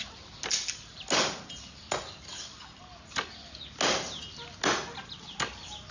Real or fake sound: real